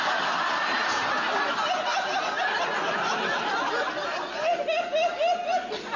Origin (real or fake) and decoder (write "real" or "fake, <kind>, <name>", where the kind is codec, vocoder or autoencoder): real